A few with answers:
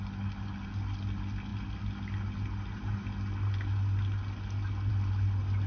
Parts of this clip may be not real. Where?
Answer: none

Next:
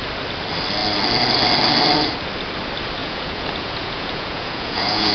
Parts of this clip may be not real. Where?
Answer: 3.0-5.1 (vocoder, Vocos)